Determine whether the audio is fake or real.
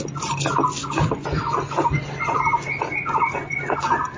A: real